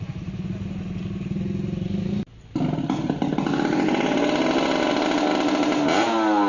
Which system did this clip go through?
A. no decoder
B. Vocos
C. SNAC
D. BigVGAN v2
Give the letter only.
A